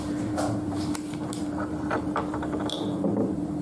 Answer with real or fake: fake